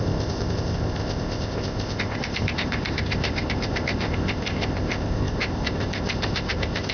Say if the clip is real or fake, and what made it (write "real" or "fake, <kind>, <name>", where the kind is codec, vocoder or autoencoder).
fake, codec, ZipCodec